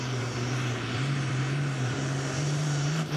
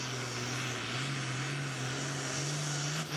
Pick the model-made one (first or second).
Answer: first